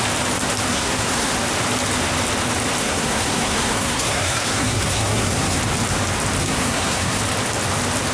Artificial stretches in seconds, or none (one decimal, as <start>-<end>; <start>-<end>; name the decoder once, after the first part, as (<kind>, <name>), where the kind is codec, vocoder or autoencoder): 0.7-1.3 (codec, SNAC); 2.8-5.6; 6.4-7.2